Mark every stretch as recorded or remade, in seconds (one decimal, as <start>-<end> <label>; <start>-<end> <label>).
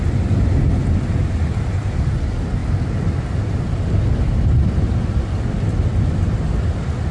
0.0-7.1 recorded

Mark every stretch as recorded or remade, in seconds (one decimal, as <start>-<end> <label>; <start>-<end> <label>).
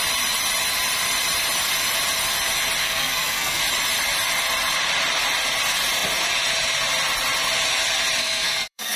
0.0-2.8 recorded; 2.8-3.6 remade; 3.6-8.2 recorded; 8.2-9.0 remade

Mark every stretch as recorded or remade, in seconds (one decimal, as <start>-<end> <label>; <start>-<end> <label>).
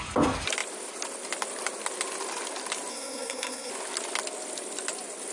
0.0-2.9 recorded; 2.9-3.7 remade; 3.7-5.3 recorded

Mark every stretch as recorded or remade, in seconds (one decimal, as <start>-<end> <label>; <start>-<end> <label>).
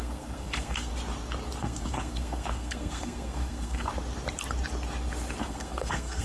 0.0-0.9 remade; 0.9-1.6 recorded; 1.6-3.9 remade; 3.9-5.4 recorded; 5.4-6.2 remade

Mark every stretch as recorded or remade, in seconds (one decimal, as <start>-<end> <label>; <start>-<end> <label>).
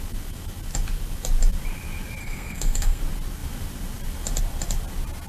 0.0-2.2 recorded; 2.2-3.0 remade; 3.0-5.3 recorded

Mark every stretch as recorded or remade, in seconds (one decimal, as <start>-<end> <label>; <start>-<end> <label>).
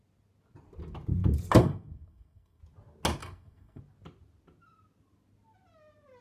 0.0-1.6 recorded; 1.6-2.6 remade; 2.6-3.2 recorded; 3.2-3.8 remade; 3.8-6.2 recorded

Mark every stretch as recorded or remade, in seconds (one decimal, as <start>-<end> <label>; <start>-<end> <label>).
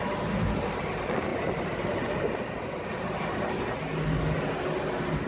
0.0-5.3 recorded